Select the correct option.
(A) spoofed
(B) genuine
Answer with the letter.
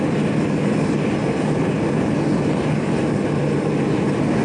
B